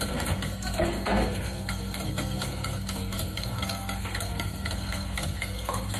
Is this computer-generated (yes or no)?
yes